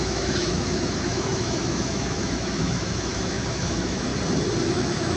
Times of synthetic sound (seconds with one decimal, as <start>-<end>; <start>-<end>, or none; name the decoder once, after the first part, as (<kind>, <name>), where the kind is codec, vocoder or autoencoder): 0.0-4.1 (autoencoder, DAC-VAE); 4.7-5.2